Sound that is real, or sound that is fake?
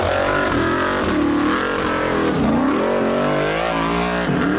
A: real